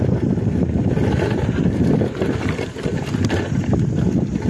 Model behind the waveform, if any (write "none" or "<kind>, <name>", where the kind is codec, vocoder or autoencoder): none